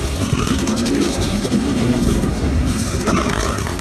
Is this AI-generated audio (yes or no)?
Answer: yes